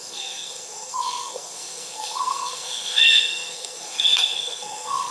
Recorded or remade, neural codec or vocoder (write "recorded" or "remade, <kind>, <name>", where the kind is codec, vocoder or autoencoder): remade, codec, SNAC